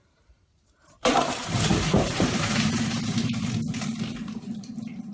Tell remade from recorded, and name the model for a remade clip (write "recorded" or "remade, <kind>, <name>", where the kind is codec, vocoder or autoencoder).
remade, vocoder, BigVGAN v2